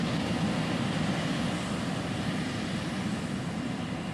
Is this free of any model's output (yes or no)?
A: yes